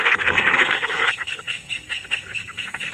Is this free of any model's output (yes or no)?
no